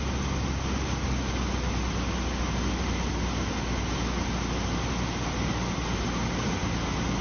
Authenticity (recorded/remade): recorded